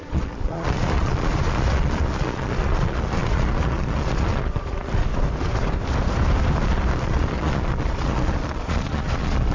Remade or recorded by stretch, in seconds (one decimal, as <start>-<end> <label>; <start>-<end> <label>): 0.0-5.1 remade; 5.1-6.9 recorded; 6.9-9.5 remade